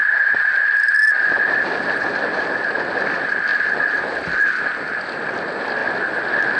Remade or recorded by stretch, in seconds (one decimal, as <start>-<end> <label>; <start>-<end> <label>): 0.0-6.6 recorded